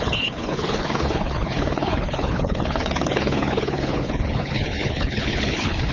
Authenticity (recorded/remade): remade